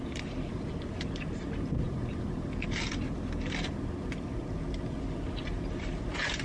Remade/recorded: remade